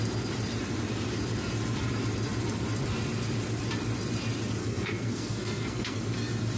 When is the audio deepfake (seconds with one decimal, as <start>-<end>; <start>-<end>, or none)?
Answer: 4.6-6.0